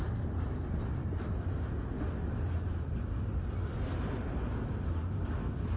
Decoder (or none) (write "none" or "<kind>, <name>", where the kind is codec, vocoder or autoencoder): none